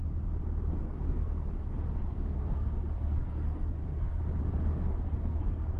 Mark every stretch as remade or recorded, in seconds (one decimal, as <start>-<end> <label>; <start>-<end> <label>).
0.0-0.8 recorded; 0.8-1.7 remade; 1.7-2.1 recorded; 2.1-4.2 remade; 4.2-4.7 recorded; 4.7-5.8 remade